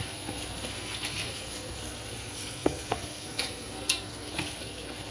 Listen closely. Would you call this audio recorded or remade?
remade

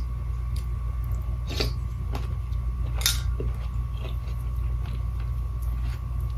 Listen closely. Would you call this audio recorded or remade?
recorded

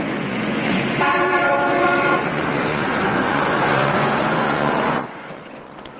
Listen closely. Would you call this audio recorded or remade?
remade